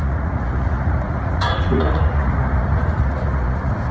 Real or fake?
fake